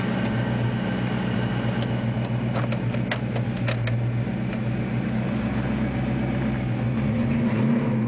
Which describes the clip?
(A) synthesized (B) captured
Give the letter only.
B